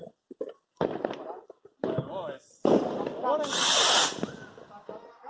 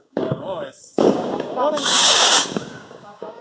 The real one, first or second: first